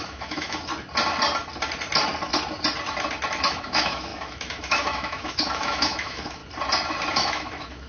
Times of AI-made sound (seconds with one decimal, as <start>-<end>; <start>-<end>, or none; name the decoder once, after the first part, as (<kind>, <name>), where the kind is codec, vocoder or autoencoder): 0.0-0.7 (autoencoder, DAC-VAE); 3.5-6.4; 7.1-7.9

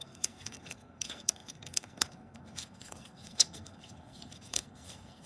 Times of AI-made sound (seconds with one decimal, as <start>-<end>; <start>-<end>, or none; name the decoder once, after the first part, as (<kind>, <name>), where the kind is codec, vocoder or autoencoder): 0.0-5.3 (codec, SNAC)

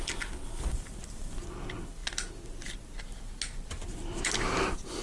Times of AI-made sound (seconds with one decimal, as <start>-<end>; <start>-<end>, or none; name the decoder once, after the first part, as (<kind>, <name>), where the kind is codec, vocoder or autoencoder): none